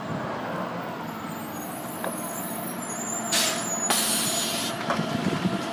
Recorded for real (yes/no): yes